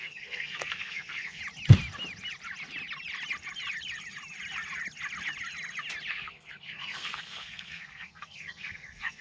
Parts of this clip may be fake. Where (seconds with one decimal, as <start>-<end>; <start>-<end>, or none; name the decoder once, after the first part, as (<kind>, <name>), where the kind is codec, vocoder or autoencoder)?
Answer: 0.0-1.4 (codec, SNAC); 6.1-9.2